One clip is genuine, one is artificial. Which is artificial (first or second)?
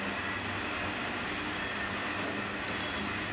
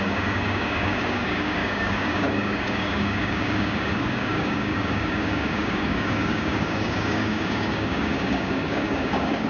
second